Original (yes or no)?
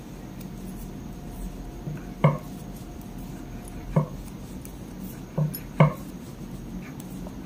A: yes